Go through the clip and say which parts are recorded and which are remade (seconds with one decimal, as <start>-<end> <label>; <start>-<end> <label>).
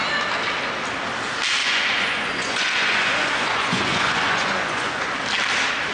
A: 0.0-1.6 recorded; 1.6-5.1 remade; 5.1-5.9 recorded